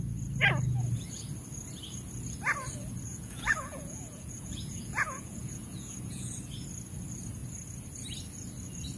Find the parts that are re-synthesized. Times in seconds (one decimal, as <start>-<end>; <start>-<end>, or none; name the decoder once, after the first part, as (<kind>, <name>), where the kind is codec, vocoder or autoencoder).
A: 3.1-6.4 (vocoder, Vocos)